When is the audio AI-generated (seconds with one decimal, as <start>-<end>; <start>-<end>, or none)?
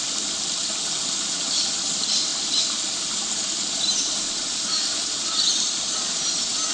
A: none